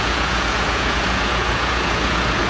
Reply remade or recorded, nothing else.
remade